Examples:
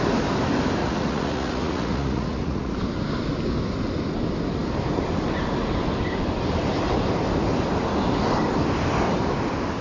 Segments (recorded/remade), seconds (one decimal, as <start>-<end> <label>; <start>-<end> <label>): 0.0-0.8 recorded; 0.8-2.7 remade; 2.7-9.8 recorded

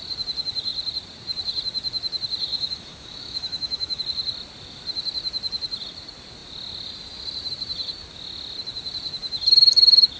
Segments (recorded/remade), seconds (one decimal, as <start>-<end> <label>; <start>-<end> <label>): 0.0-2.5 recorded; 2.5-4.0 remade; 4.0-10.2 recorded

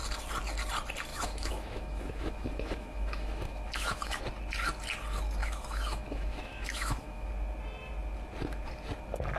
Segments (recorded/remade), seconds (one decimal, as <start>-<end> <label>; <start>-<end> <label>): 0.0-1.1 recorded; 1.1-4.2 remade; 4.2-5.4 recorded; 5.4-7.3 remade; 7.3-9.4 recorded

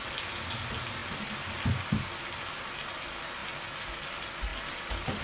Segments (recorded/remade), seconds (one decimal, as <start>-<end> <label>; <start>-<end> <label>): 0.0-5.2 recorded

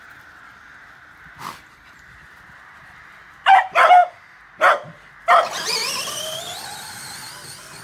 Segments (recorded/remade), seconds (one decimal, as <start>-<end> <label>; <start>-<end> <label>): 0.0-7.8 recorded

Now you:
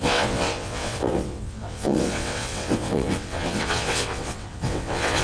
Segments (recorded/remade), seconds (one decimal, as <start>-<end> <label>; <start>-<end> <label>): 0.0-5.2 remade